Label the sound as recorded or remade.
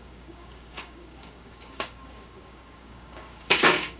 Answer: remade